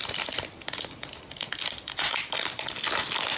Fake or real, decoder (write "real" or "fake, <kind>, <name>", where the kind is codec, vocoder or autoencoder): real